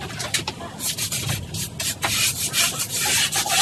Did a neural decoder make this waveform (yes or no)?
no